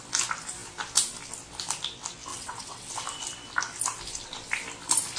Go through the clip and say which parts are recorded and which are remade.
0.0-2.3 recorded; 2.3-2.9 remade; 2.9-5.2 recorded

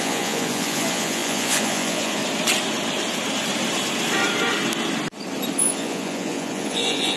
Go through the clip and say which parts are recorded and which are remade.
0.0-2.2 remade; 2.2-5.6 recorded; 5.6-7.2 remade

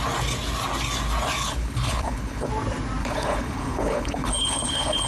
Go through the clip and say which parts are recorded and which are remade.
0.0-1.4 recorded; 1.4-2.5 remade; 2.5-3.0 recorded; 3.0-5.1 remade